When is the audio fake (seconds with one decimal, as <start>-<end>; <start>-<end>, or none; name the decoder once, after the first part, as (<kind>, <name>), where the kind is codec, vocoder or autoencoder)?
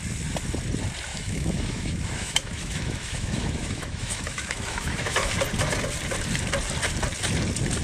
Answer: 1.1-5.3 (autoencoder, DAC-VAE)